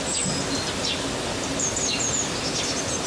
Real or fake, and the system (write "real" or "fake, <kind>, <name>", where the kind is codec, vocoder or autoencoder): real